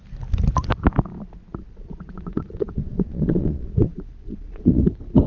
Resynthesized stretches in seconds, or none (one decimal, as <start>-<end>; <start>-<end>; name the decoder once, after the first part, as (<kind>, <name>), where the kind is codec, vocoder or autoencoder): 1.6-4.8 (vocoder, Vocos)